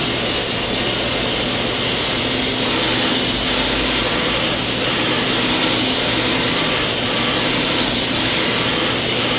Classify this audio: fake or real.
real